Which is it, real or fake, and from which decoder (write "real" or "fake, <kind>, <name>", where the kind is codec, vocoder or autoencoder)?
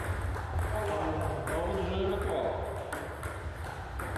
real